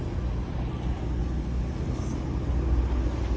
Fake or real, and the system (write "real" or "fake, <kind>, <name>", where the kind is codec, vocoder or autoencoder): real